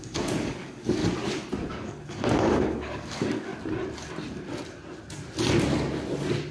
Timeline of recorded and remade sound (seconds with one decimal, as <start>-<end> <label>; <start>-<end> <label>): 0.0-1.0 remade; 1.0-1.7 recorded; 1.7-3.5 remade; 3.5-6.5 recorded